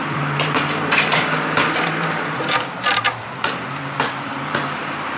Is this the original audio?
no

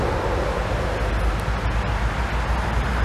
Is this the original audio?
yes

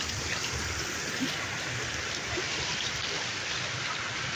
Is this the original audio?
no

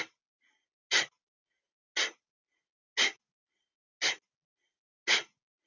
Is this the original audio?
yes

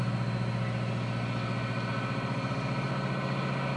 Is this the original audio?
yes